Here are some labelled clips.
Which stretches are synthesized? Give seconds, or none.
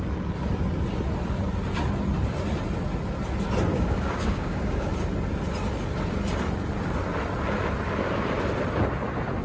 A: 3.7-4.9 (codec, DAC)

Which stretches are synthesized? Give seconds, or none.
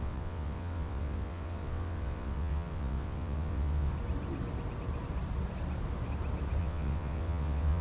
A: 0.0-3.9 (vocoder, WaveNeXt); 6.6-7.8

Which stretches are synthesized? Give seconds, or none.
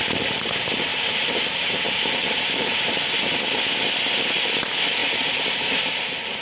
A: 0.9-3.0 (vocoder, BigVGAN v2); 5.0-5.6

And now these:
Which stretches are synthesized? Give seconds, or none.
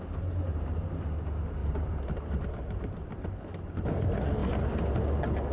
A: 1.6-2.8 (vocoder, BigVGAN v2)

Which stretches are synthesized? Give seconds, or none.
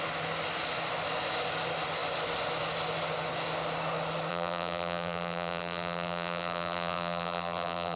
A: 4.3-8.0 (vocoder, BigVGAN v2)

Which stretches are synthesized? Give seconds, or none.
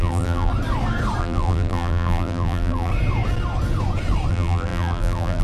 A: 0.0-0.5 (vocoder, BigVGAN v2); 1.2-2.9; 4.3-5.4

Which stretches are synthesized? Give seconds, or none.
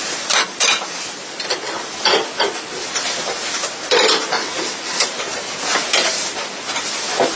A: none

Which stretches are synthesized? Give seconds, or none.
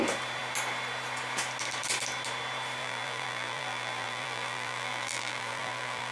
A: 2.8-6.1 (vocoder, BigVGAN v2)